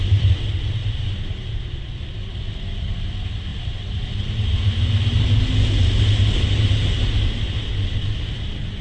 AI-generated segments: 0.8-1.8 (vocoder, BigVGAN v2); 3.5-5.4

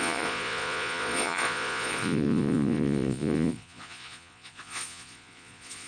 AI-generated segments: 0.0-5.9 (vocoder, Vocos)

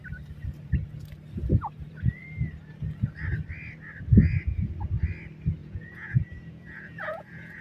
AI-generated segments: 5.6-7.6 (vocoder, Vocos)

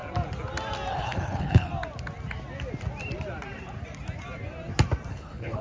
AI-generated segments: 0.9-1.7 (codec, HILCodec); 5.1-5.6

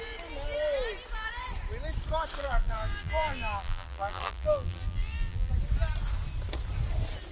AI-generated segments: 2.4-5.5 (vocoder, BigVGAN v2)

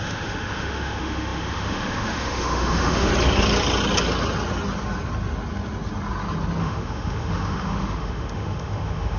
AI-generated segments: 0.0-3.1 (autoencoder, DAC-VAE); 6.6-9.2